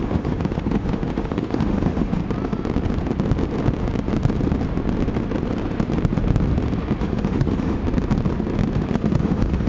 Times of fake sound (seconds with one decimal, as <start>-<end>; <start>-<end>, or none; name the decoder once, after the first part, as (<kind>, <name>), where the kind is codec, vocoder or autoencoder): 0.0-2.2 (autoencoder, DAC-VAE); 7.0-7.8; 8.9-9.7